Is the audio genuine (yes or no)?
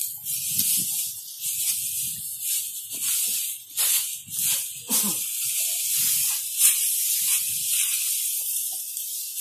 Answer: yes